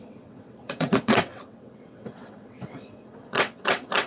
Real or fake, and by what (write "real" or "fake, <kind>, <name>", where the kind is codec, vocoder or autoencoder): fake, vocoder, WaveNeXt